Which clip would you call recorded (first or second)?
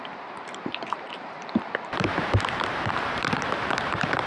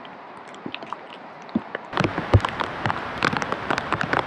second